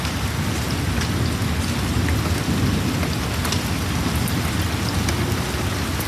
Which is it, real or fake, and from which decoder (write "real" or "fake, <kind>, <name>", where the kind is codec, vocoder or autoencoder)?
real